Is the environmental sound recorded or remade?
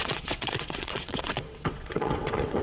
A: remade